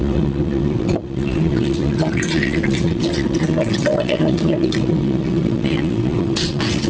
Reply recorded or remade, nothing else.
remade